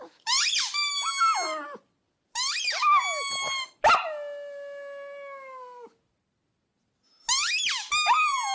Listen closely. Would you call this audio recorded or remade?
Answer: recorded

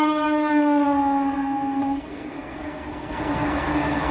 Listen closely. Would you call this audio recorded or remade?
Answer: remade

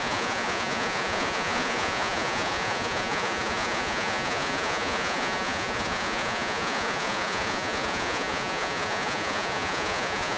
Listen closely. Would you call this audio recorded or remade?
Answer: remade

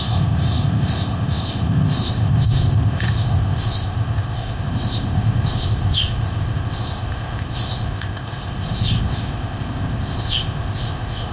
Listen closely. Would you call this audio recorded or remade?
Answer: remade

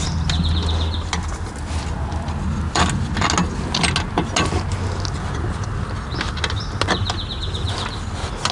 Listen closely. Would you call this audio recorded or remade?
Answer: recorded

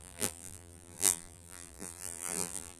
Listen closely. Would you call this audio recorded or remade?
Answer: remade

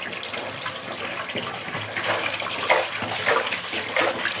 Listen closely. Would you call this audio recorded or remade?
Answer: recorded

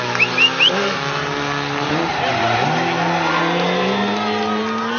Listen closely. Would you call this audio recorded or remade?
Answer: recorded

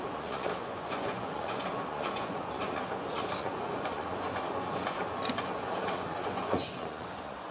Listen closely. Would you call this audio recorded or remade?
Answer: remade